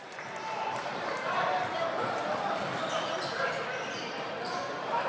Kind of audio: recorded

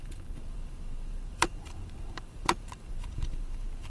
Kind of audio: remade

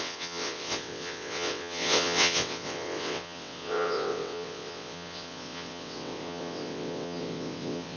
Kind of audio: remade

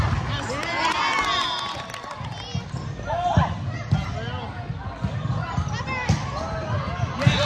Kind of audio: recorded